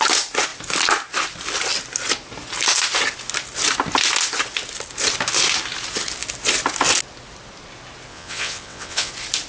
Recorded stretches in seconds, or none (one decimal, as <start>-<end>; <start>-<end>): 0.0-8.1; 9.1-9.5